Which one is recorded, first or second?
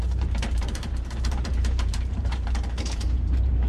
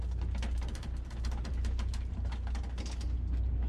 second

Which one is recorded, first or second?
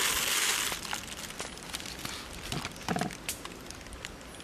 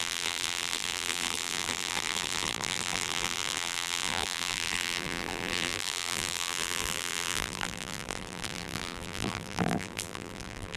first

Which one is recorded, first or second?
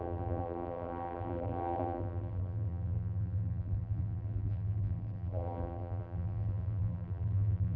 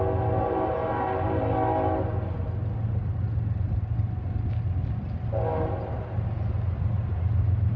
second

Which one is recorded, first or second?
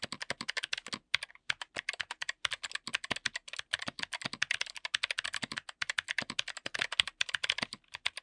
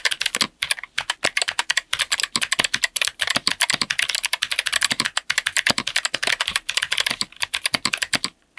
first